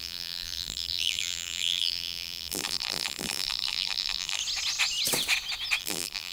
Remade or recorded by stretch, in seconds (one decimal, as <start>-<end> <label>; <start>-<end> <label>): 0.0-4.4 remade; 4.4-5.8 recorded; 5.8-6.3 remade